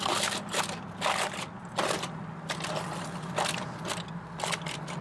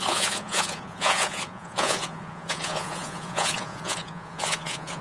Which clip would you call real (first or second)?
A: first